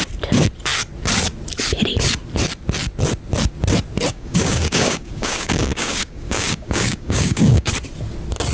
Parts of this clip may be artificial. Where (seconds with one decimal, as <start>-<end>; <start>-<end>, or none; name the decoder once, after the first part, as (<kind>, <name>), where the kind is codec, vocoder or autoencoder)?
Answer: 4.1-7.7 (codec, DAC)